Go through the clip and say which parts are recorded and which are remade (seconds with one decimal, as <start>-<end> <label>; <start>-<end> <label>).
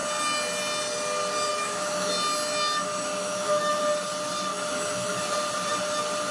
0.0-1.5 recorded; 1.5-2.1 remade; 2.1-3.2 recorded; 3.2-3.8 remade; 3.8-4.5 recorded; 4.5-5.2 remade; 5.2-6.3 recorded